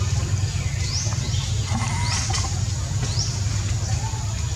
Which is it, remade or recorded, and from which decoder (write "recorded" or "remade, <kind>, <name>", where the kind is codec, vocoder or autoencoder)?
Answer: recorded